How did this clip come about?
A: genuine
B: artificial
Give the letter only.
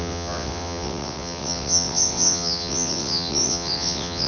B